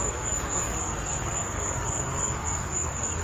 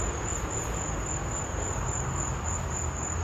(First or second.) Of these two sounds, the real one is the second